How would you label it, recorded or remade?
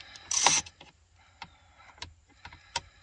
remade